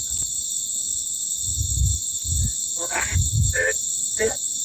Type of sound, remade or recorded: recorded